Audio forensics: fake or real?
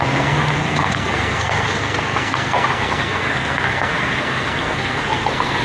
fake